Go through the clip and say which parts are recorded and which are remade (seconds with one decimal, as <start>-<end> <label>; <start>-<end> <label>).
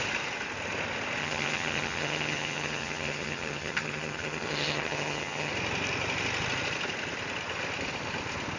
0.0-1.2 recorded; 1.2-5.5 remade; 5.5-8.6 recorded